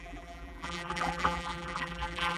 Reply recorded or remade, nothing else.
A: remade